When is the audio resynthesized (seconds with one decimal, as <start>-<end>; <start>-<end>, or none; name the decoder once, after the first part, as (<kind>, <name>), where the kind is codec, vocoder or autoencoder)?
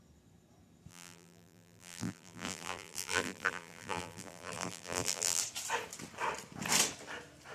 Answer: 0.9-5.4 (vocoder, BigVGAN v2)